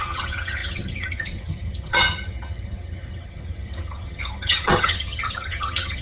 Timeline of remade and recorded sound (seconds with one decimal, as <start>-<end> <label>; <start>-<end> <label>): 0.0-6.0 remade